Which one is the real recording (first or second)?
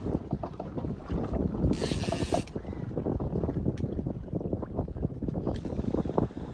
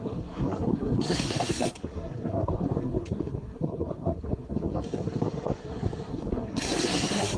first